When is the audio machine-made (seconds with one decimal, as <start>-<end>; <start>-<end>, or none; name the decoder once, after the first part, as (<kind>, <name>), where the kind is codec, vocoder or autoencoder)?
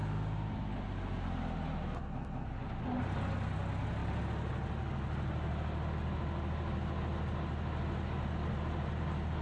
none